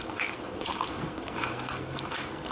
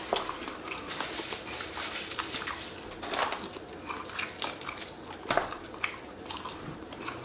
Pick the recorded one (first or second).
second